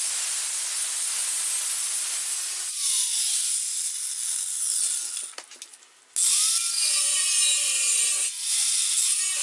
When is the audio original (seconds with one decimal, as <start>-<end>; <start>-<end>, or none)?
0.0-9.4